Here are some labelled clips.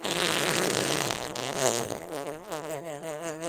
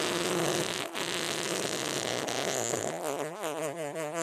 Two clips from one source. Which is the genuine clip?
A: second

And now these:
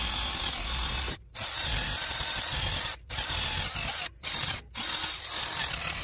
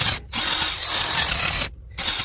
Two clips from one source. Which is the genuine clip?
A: first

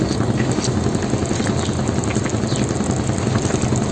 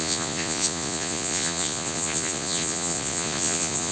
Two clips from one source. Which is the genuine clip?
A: first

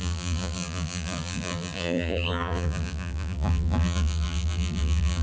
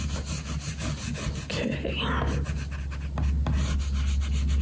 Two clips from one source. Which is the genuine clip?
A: second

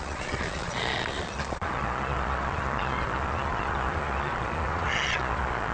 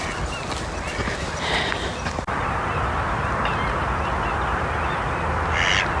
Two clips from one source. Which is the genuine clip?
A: second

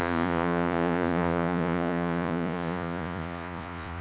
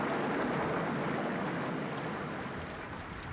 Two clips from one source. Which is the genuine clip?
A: second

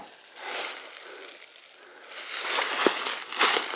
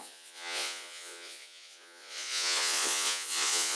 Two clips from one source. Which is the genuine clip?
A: first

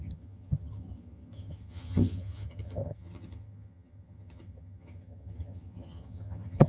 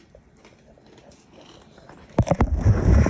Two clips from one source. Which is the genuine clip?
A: second